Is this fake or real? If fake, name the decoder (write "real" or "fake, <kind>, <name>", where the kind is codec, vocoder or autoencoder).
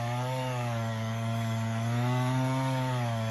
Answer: fake, codec, DAC